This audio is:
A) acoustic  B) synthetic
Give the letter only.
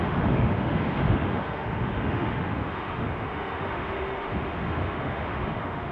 B